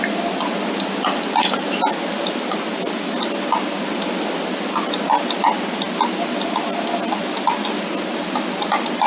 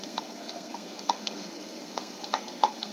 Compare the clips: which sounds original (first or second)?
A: first